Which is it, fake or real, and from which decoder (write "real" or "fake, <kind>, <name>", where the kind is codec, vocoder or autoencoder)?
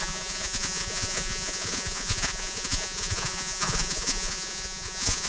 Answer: fake, vocoder, Vocos